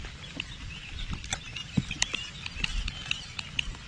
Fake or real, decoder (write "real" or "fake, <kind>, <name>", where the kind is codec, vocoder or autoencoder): real